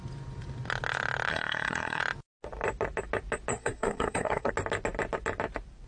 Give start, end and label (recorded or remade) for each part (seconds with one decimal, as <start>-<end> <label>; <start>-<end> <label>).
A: 0.0-1.3 recorded; 1.3-2.0 remade; 2.0-3.5 recorded; 3.5-4.5 remade; 4.5-5.9 recorded